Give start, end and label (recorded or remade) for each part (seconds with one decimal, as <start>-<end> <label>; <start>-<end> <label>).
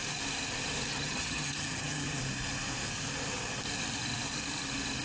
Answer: 0.0-0.9 recorded; 0.9-2.2 remade; 2.2-5.0 recorded